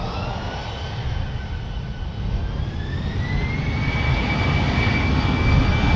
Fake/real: real